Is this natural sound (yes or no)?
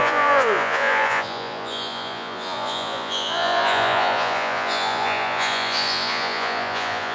no